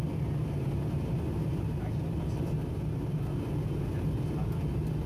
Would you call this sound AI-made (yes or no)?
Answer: no